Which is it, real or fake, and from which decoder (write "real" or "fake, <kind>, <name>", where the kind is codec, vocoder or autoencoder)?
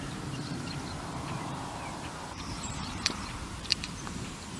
fake, vocoder, BigVGAN v2